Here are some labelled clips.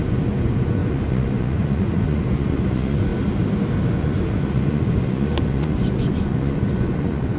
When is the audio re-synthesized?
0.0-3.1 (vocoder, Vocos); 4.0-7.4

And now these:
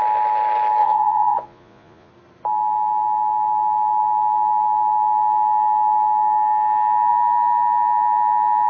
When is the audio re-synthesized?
0.8-2.1 (vocoder, Vocos)

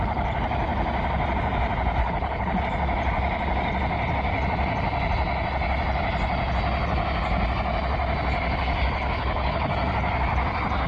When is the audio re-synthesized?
2.0-2.6 (codec, HILCodec); 9.2-9.7

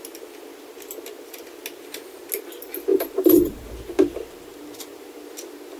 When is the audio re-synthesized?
2.9-3.7 (vocoder, BigVGAN v2)

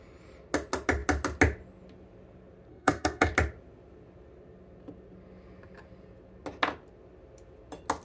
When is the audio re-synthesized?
2.7-3.3 (codec, SNAC)